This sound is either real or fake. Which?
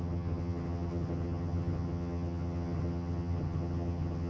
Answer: fake